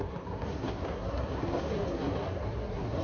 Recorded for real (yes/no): no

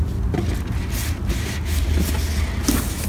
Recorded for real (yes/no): yes